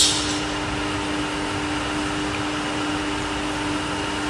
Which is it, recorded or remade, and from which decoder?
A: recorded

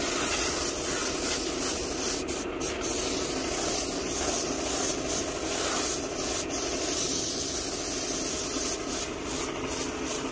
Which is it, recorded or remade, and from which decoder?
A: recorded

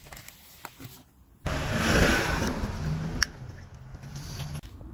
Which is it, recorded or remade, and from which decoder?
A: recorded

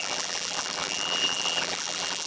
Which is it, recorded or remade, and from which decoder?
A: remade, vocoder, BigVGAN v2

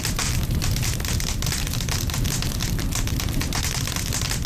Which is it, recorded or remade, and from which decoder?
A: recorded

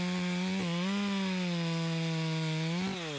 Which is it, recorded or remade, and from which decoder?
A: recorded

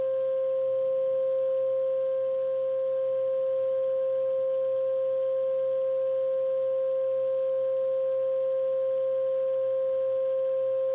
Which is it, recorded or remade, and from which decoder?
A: recorded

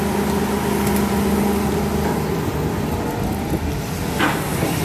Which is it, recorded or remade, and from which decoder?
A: recorded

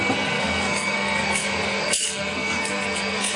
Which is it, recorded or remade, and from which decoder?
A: remade, codec, SNAC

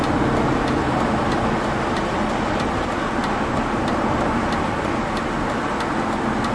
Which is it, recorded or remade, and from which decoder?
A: recorded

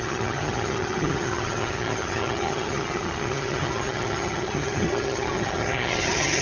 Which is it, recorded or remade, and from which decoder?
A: remade, vocoder, HiFi-GAN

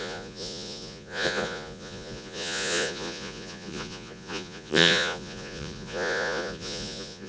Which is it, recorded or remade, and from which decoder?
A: remade, vocoder, Vocos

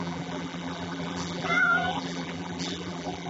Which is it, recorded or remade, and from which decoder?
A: remade, vocoder, BigVGAN v2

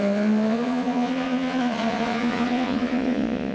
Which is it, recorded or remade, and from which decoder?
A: remade, vocoder, Vocos